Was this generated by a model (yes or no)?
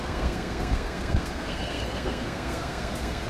yes